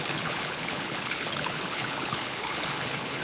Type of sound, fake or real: fake